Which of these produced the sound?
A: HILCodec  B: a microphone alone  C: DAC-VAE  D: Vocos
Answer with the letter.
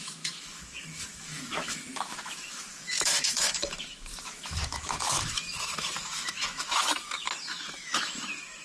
C